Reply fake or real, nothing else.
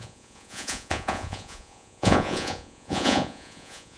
fake